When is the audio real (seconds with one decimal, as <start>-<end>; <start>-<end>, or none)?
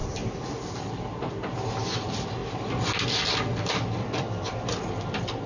2.4-3.7